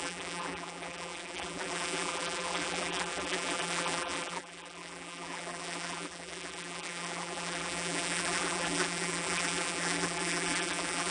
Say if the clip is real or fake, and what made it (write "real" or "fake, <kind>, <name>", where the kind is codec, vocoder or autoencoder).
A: fake, vocoder, BigVGAN v2